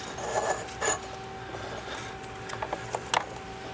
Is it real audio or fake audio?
real